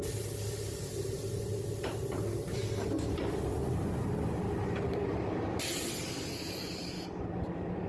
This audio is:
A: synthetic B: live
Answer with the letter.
B